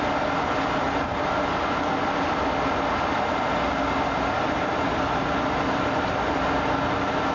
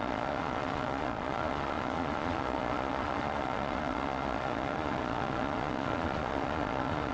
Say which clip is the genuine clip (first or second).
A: first